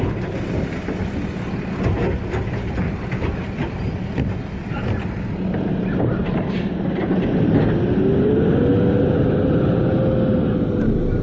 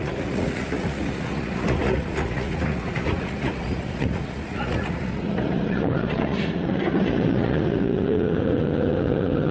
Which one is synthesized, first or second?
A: second